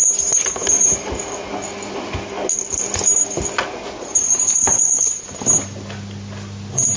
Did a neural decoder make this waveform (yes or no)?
no